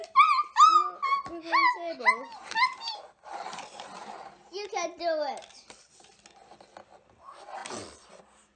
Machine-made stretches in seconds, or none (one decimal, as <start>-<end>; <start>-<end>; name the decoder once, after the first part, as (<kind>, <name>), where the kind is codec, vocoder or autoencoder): 7.6-8.2 (vocoder, BigVGAN v2)